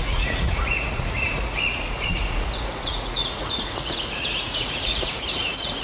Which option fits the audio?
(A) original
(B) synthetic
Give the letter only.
B